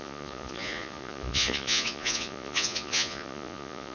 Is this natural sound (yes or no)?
no